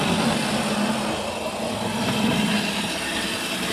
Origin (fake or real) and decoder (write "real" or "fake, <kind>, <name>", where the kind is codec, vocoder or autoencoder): real